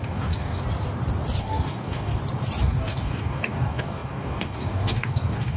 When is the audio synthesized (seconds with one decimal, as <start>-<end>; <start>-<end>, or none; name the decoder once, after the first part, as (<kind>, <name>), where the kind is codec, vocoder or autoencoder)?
0.0-0.6 (codec, DAC); 1.4-2.1; 2.6-5.6